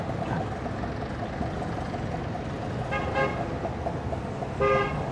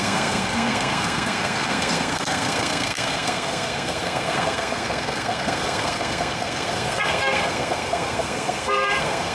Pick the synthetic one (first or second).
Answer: second